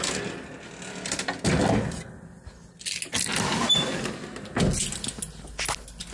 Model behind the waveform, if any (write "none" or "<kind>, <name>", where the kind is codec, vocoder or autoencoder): none